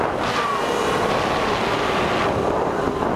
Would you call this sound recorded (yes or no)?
yes